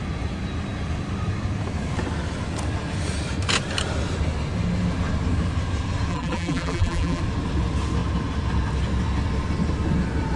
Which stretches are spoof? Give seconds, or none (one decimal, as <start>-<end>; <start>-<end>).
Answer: 6.1-7.2